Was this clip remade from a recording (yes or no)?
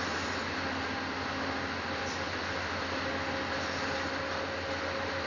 no